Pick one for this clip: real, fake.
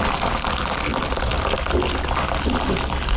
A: real